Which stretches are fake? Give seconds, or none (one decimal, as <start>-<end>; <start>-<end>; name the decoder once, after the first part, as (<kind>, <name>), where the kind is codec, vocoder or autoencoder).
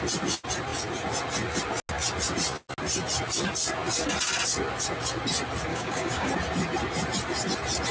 5.7-6.3 (codec, DAC)